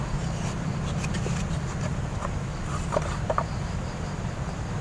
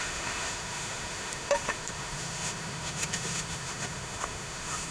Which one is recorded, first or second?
first